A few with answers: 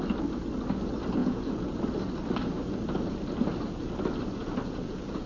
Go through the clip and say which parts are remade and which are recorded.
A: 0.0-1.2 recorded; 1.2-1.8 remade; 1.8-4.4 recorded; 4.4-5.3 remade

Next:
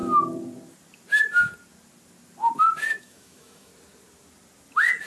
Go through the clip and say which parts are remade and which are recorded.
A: 0.0-3.0 recorded; 3.0-3.7 remade; 3.7-5.1 recorded

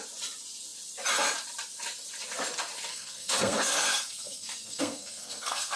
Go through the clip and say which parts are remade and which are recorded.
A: 0.0-2.9 recorded; 2.9-5.8 remade

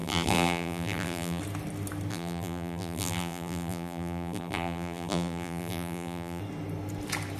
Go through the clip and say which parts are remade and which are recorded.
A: 0.0-1.4 remade; 1.4-2.1 recorded; 2.1-6.4 remade; 6.4-7.4 recorded

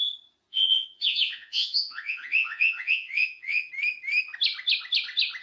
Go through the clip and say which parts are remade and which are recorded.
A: 0.0-0.5 recorded; 0.5-3.7 remade; 3.7-5.4 recorded

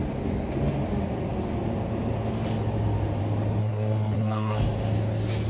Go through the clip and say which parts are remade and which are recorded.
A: 0.0-3.6 recorded; 3.6-4.6 remade; 4.6-5.5 recorded

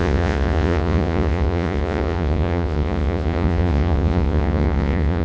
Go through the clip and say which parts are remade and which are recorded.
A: 0.0-5.2 remade

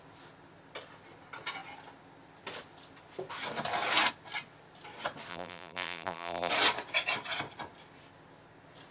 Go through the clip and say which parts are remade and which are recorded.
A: 0.0-5.3 recorded; 5.3-6.5 remade; 6.5-8.9 recorded